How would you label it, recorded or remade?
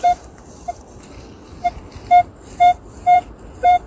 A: remade